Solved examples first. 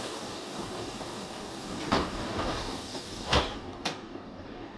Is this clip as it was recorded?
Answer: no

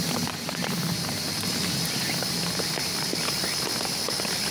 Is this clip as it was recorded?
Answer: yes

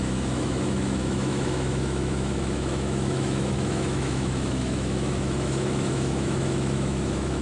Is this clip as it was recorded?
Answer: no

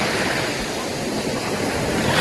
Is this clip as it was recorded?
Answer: yes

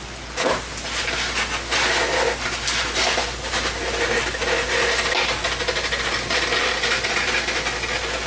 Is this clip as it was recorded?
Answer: yes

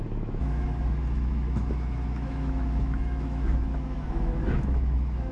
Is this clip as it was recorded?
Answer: no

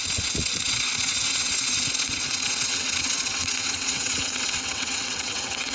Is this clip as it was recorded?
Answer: no